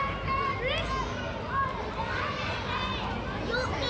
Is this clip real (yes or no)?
yes